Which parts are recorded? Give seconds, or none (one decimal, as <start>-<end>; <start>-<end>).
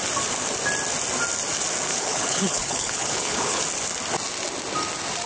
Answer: 0.0-1.9; 3.6-5.3